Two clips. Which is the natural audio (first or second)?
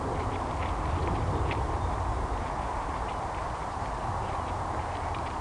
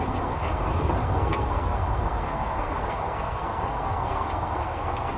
first